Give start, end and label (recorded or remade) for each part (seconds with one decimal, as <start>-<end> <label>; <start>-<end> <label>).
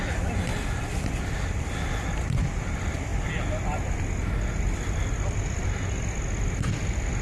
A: 0.0-7.2 recorded